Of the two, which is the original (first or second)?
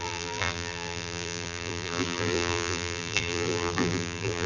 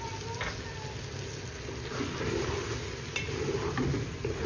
second